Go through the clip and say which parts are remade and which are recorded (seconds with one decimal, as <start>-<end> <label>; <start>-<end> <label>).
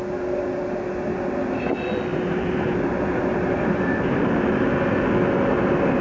0.0-2.1 recorded; 2.1-4.2 remade; 4.2-6.0 recorded